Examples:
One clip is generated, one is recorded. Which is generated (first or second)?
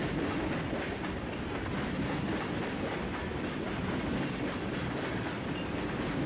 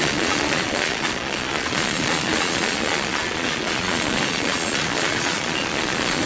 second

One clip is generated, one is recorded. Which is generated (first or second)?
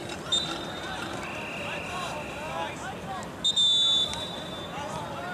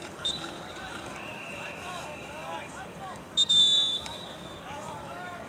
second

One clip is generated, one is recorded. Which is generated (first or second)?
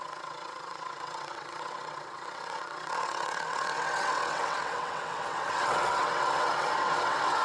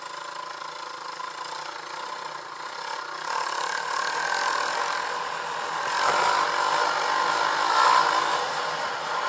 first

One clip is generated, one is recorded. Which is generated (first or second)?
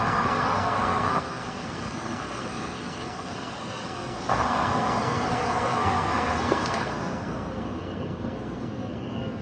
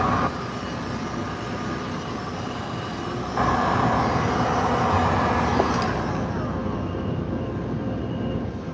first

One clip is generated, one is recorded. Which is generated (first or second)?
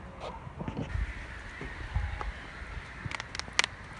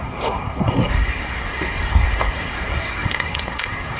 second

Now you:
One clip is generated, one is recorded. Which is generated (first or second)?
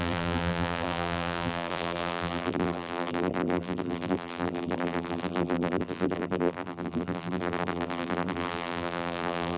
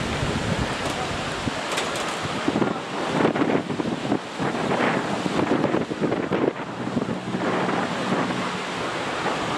first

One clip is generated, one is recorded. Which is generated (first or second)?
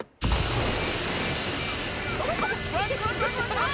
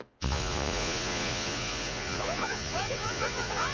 second